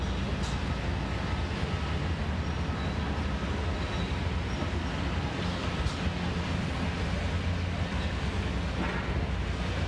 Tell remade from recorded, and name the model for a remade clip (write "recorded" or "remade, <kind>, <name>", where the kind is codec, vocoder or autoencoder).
recorded